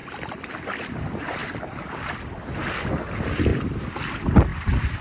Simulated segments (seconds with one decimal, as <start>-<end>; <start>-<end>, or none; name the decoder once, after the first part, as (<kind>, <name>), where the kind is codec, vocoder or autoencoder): 0.0-0.5 (vocoder, BigVGAN v2); 3.5-4.1; 4.5-5.0